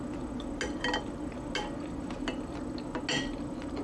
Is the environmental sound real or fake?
real